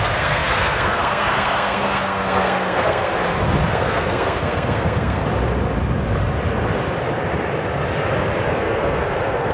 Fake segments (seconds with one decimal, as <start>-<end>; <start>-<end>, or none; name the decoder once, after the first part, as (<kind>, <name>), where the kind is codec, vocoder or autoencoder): 0.0-3.1 (codec, SNAC); 3.7-5.2; 8.5-9.5